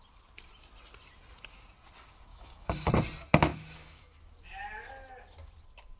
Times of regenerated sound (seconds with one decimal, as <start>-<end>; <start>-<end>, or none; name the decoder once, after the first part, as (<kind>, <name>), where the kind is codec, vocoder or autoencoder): 2.3-2.9 (autoencoder, DAC-VAE); 3.5-4.2

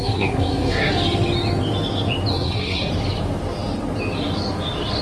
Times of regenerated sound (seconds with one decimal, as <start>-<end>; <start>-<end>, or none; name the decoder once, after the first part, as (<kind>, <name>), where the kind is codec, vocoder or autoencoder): 0.0-0.9 (codec, SNAC); 2.3-2.9